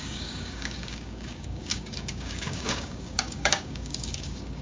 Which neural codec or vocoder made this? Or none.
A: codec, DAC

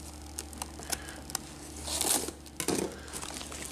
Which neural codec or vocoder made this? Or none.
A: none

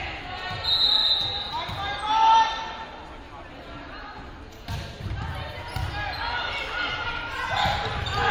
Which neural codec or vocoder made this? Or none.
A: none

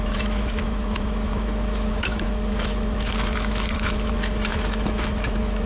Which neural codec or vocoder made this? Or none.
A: autoencoder, DAC-VAE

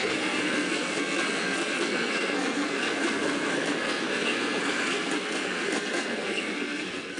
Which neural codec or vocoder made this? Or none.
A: codec, SNAC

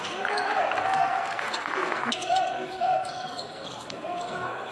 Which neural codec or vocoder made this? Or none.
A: codec, SNAC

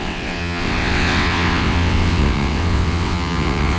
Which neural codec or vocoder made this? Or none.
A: vocoder, WaveNeXt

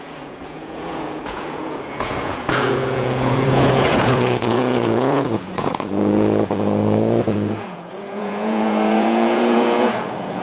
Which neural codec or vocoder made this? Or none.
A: vocoder, Vocos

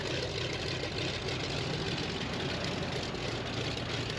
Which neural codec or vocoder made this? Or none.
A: none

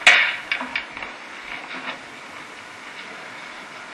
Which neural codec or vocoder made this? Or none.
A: none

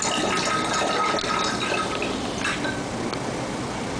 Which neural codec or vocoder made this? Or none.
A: none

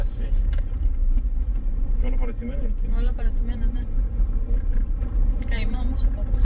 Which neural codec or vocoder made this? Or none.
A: vocoder, BigVGAN v2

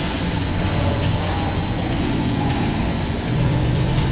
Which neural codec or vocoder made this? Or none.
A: vocoder, Vocos